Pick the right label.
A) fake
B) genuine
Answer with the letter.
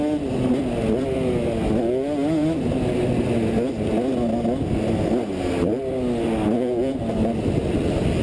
B